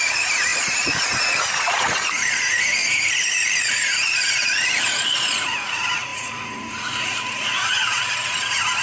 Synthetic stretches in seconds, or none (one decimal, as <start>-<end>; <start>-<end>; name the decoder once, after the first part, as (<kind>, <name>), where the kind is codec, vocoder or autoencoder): 0.0-8.8 (vocoder, Vocos)